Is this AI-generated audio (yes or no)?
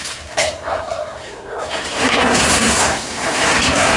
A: yes